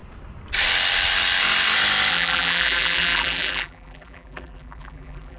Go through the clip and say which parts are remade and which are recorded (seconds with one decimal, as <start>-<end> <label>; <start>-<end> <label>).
0.0-2.1 recorded; 2.1-5.4 remade

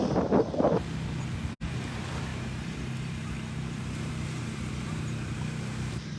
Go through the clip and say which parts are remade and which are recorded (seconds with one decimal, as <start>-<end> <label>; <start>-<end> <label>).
0.0-2.3 recorded; 2.3-6.2 remade

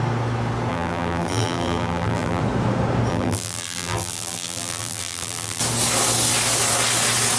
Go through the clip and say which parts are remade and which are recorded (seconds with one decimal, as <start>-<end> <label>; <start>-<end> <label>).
0.0-0.7 recorded; 0.7-2.4 remade; 2.4-3.1 recorded; 3.1-5.6 remade; 5.6-7.4 recorded

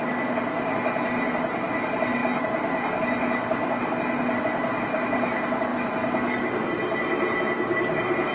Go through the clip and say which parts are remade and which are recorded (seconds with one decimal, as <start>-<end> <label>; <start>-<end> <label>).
0.0-8.3 recorded

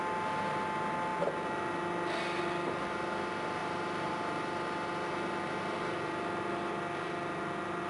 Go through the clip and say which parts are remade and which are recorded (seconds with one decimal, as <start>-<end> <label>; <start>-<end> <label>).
0.0-3.6 recorded; 3.6-4.2 remade; 4.2-7.9 recorded